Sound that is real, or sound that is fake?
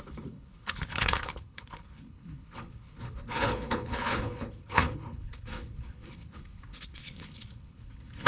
fake